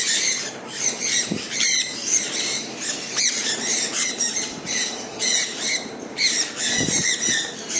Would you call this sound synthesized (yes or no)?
yes